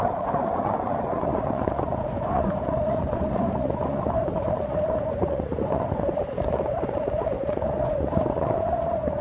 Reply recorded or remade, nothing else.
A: remade